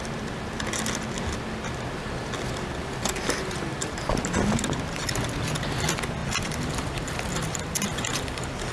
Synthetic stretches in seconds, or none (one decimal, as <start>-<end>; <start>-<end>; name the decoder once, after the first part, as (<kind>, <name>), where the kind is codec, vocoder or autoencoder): 6.2-8.7 (vocoder, BigVGAN v2)